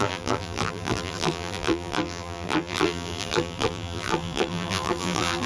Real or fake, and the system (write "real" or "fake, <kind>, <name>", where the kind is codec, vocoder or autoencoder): fake, vocoder, BigVGAN v2